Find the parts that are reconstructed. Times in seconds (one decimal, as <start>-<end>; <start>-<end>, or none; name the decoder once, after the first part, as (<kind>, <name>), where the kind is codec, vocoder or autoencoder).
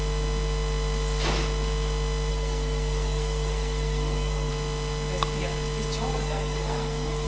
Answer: 2.3-4.5 (codec, SNAC); 6.1-7.3